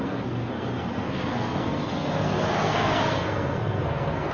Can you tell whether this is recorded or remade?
remade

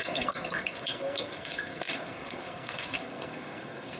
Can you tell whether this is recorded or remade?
remade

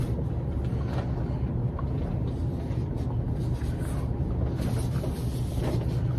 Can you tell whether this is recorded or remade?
recorded